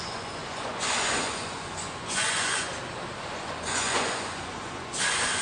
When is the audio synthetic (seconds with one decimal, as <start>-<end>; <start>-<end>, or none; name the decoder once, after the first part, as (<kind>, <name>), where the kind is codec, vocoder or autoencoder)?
0.0-2.7 (vocoder, Vocos); 3.3-5.4